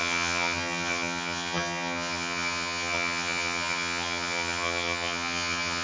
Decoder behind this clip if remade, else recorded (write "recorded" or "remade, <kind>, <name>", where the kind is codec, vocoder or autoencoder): remade, vocoder, HiFi-GAN